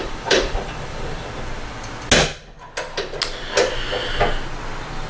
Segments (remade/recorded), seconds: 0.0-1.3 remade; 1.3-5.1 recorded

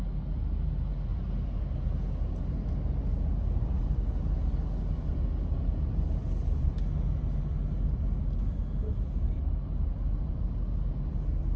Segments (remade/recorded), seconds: 0.0-1.1 recorded; 1.1-1.6 remade; 1.6-11.6 recorded

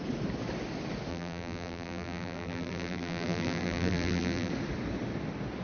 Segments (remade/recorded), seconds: 0.0-1.1 recorded; 1.1-4.5 remade; 4.5-5.6 recorded

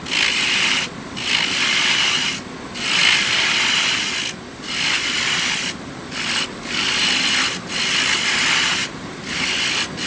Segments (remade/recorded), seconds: 0.0-8.8 recorded; 8.8-9.4 remade; 9.4-10.1 recorded